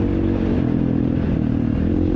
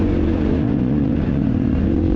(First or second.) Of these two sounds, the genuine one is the first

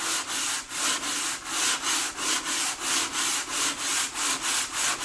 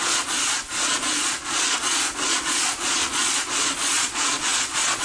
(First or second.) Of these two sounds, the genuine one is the first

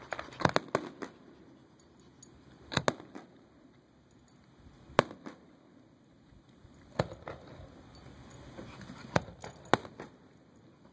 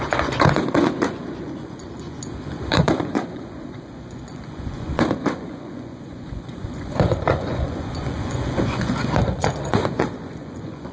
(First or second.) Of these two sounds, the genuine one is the first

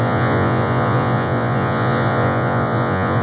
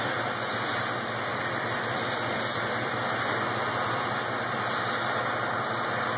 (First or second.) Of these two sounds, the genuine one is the second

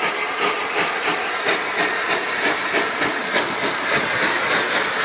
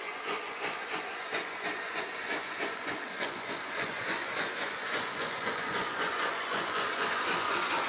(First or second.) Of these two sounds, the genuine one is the first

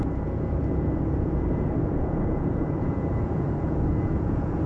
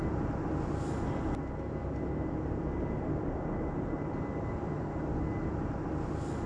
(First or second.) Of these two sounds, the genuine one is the second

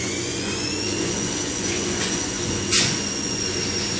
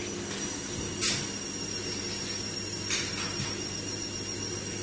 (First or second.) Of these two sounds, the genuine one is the second